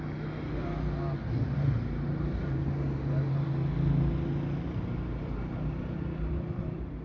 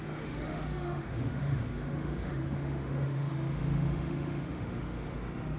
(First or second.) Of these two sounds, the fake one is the second